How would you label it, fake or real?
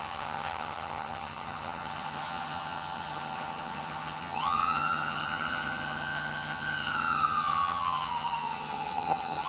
fake